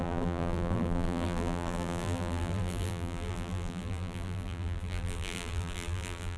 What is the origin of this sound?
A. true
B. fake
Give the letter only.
B